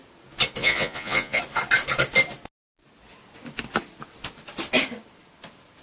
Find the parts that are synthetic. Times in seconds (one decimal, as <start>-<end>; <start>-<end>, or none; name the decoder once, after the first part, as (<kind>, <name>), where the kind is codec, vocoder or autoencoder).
0.6-1.4 (vocoder, Vocos)